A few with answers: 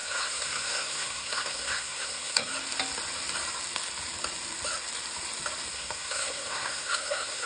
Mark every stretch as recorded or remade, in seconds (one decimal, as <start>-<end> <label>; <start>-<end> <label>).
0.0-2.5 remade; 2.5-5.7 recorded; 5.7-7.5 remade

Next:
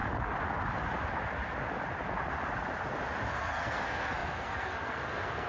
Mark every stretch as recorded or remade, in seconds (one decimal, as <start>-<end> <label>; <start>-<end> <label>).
0.0-3.3 recorded; 3.3-5.5 remade

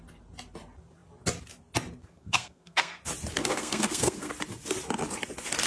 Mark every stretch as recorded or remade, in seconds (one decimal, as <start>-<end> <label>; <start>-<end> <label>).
0.0-2.1 recorded; 2.1-3.0 remade; 3.0-3.4 recorded; 3.4-4.3 remade; 4.3-5.7 recorded

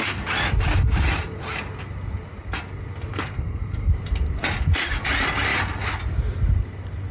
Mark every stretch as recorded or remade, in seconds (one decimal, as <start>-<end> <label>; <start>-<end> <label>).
0.0-3.1 recorded; 3.1-3.9 remade; 3.9-7.1 recorded